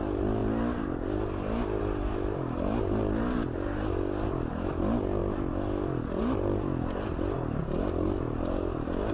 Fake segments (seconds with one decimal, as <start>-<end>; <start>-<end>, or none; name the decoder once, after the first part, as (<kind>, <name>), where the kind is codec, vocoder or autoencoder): none